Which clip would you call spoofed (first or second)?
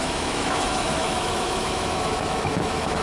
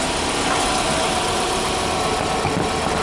first